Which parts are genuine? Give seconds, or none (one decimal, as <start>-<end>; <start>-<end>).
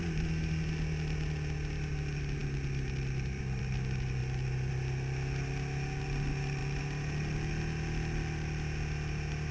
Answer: 0.0-9.5